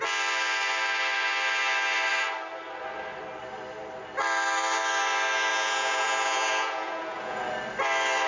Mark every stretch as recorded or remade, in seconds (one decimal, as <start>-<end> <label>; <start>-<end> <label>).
0.0-5.5 recorded; 5.5-7.4 remade; 7.4-8.3 recorded